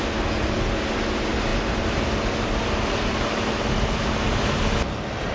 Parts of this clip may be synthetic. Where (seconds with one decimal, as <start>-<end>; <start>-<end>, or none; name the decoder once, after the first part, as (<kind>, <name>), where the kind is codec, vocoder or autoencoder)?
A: none